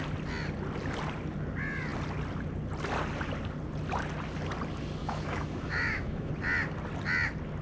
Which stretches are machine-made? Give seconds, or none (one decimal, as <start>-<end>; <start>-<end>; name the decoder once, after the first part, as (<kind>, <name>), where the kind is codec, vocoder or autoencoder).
5.0-6.3 (autoencoder, DAC-VAE)